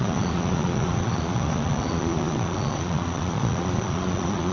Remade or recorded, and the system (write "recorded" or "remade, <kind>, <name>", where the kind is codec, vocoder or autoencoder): remade, vocoder, Vocos